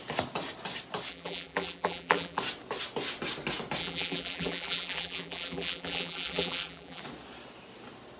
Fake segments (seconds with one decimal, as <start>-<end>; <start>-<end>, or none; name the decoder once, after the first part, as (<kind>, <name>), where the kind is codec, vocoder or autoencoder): 1.1-2.4 (vocoder, BigVGAN v2); 3.8-7.0